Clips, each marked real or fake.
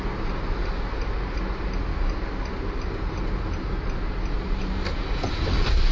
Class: real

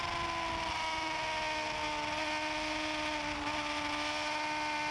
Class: real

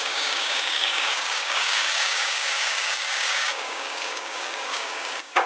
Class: fake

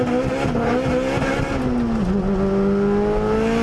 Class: real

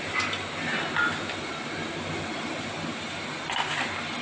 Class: real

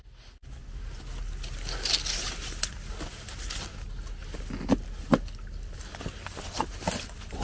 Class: real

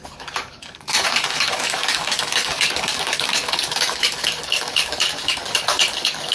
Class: fake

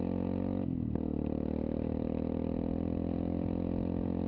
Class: real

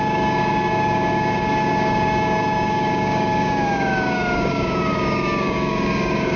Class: fake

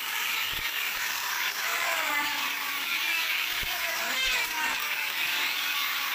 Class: fake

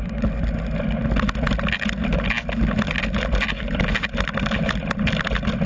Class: real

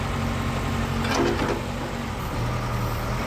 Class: real